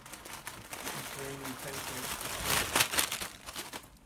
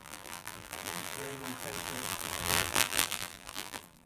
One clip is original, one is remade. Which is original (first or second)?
first